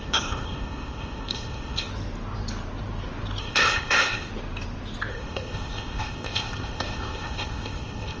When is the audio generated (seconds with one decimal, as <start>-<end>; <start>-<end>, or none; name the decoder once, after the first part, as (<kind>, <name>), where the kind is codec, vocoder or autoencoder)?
0.0-1.9 (codec, ZipCodec); 3.4-4.3; 5.1-8.2